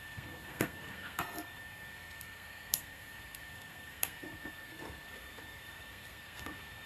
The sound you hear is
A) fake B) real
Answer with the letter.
A